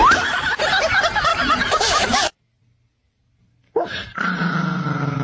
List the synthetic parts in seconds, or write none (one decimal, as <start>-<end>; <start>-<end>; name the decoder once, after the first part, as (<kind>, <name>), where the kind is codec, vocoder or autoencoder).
1.3-2.4 (vocoder, BigVGAN v2); 3.6-4.5